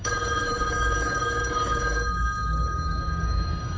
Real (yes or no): no